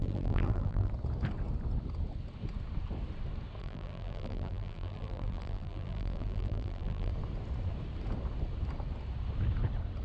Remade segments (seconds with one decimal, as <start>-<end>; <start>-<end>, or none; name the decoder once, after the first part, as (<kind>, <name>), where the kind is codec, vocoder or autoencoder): 0.0-0.9 (vocoder, BigVGAN v2); 3.6-7.1